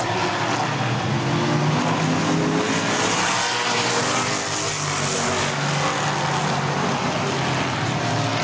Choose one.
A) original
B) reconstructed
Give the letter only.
A